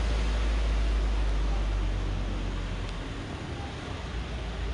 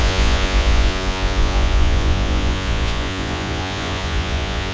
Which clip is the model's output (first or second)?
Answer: second